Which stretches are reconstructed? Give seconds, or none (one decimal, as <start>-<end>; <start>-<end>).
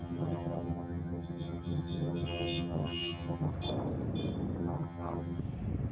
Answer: 0.0-3.5; 4.6-5.4